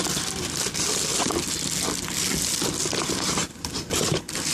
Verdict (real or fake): real